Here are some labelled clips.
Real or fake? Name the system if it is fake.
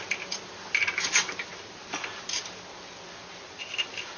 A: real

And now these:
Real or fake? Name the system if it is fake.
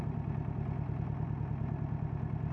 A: real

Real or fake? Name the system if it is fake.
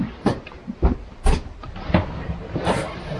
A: fake, vocoder, BigVGAN v2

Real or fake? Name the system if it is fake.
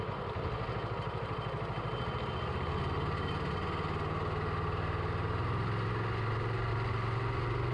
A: real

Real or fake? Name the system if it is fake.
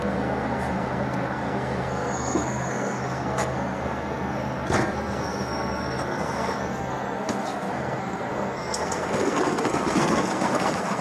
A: fake, codec, SNAC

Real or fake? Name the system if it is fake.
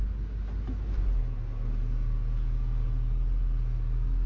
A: real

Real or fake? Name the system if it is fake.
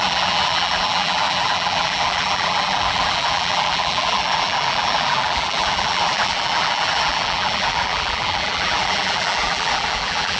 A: fake, vocoder, BigVGAN v2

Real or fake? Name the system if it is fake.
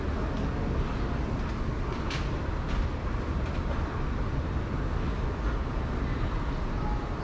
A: real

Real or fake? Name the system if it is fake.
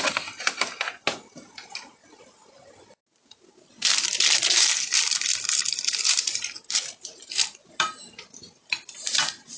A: real